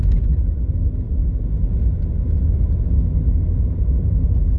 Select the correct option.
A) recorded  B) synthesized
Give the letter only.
A